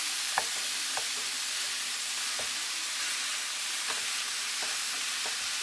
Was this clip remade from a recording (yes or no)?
no